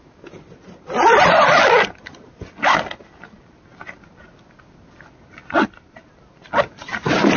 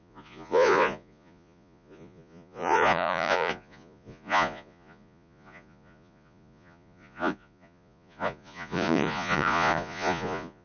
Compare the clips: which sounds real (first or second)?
first